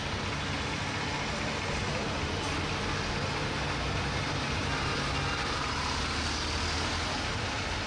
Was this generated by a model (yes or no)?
no